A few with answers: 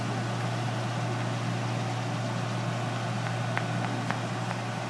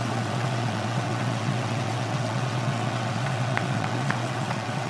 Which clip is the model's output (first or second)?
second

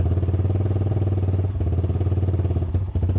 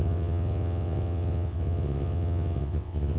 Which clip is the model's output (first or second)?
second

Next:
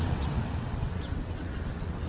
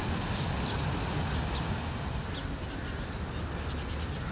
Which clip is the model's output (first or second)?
first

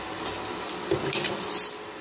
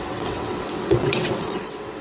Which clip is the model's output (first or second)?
second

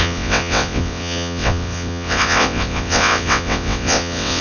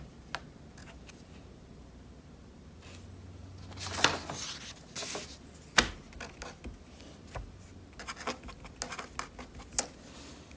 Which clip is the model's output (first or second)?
first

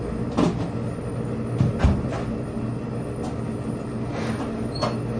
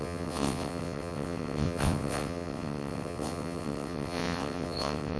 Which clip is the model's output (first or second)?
second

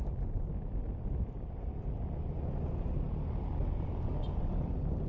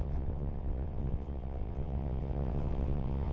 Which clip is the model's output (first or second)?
second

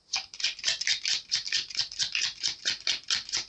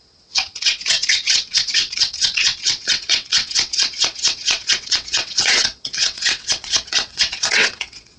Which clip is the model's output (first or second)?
second